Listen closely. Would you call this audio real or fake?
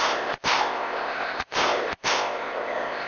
fake